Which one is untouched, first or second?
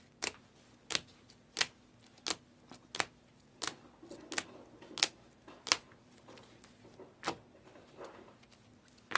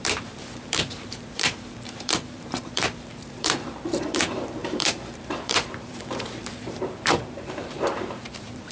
first